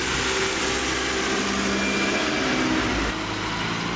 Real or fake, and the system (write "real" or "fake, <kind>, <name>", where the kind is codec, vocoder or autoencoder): real